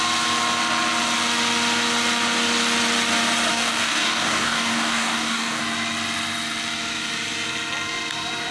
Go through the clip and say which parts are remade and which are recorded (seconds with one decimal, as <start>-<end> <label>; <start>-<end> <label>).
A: 0.0-3.5 recorded; 3.5-5.6 remade; 5.6-8.5 recorded